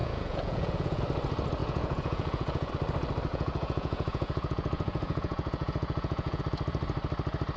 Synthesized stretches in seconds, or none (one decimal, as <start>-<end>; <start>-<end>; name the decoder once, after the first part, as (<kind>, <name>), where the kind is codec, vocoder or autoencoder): 0.0-1.0 (vocoder, Vocos); 1.6-2.7; 3.3-6.4